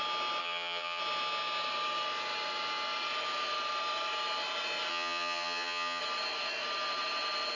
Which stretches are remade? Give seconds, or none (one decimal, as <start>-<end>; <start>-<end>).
0.4-1.0; 4.9-6.0